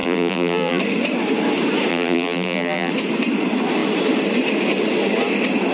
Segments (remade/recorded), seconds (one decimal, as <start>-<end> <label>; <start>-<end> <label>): 0.0-0.8 remade; 0.8-1.9 recorded; 1.9-2.9 remade; 2.9-5.7 recorded